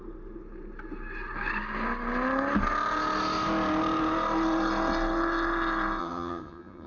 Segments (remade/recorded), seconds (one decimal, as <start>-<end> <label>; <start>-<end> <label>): 0.0-6.0 recorded; 6.0-6.9 remade